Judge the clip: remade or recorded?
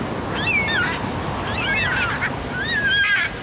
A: recorded